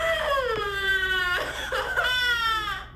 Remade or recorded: remade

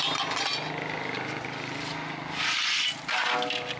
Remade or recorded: recorded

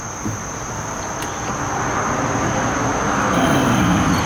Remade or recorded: recorded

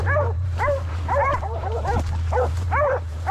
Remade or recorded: remade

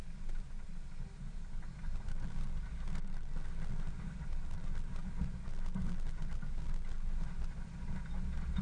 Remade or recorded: recorded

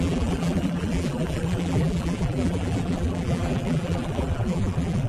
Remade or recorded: remade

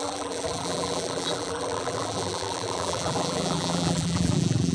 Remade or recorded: remade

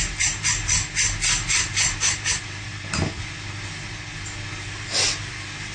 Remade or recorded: recorded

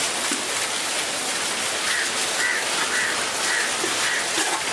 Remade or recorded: recorded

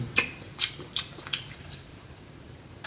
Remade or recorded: remade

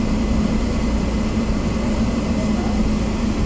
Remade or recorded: recorded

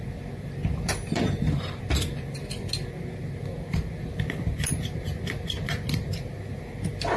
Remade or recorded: remade